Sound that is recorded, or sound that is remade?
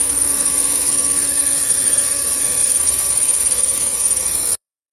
remade